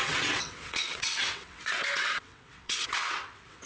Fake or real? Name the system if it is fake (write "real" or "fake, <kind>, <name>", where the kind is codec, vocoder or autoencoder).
fake, vocoder, WaveNeXt